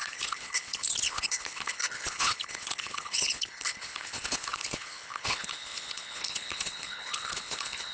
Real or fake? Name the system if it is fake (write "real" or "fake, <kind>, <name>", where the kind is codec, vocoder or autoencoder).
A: fake, codec, HILCodec